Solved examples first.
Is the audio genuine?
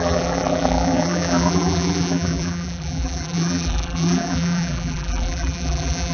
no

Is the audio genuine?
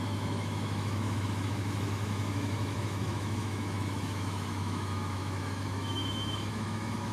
no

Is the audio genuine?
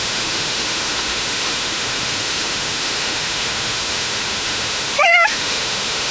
no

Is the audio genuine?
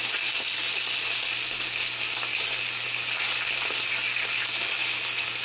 yes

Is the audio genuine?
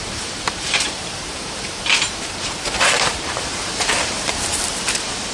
no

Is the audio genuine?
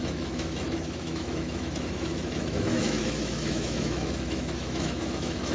no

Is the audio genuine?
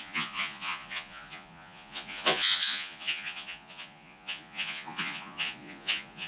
no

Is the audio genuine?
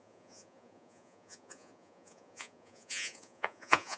no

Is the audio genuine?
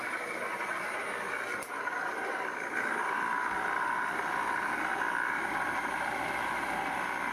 yes